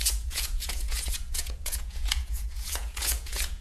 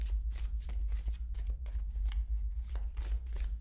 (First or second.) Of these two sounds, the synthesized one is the first